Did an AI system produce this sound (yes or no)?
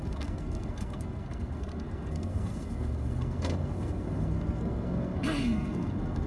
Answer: yes